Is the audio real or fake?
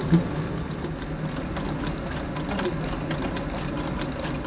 real